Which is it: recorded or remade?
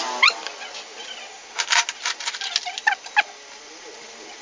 recorded